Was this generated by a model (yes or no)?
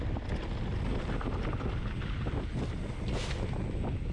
no